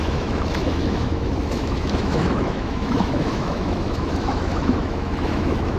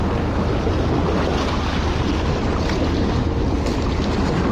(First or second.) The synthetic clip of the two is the first